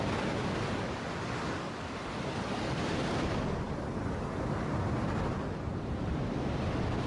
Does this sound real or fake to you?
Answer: fake